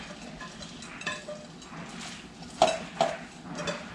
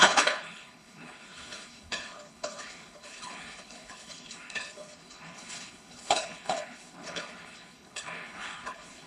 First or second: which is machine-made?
second